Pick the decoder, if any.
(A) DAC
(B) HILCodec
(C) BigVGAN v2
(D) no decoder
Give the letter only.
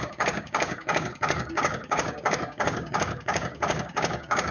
A